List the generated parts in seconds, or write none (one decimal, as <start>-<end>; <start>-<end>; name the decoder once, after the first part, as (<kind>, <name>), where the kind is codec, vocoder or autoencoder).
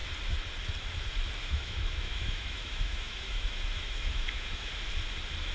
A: 1.4-4.7 (autoencoder, DAC-VAE)